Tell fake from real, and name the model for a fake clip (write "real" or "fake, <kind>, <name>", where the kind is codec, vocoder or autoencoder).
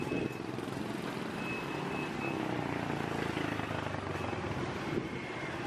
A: real